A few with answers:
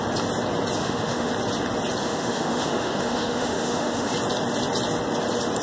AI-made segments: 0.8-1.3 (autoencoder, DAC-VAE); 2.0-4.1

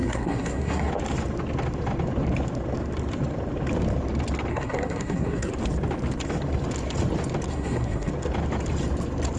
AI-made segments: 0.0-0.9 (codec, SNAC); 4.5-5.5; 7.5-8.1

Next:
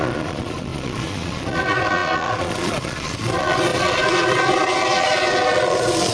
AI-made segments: 0.0-6.1 (vocoder, Vocos)

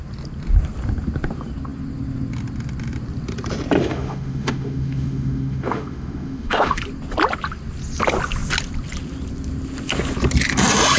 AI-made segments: 3.8-6.8 (autoencoder, DAC-VAE)

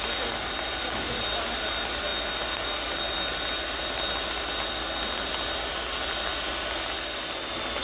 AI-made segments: none

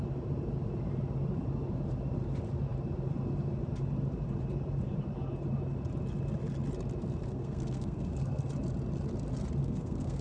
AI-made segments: 7.3-8.4 (codec, SNAC); 9.6-10.2